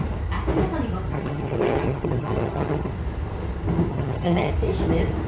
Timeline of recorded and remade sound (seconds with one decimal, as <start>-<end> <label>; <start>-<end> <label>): 0.0-1.1 recorded; 1.1-2.9 remade; 2.9-3.9 recorded; 3.9-4.5 remade; 4.5-5.3 recorded